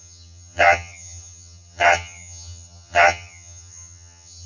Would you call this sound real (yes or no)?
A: no